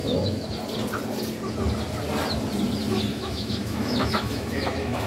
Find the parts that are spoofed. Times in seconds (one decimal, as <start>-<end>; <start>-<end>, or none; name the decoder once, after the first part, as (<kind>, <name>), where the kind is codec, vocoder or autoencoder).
0.0-0.5 (autoencoder, DAC-VAE); 3.1-5.1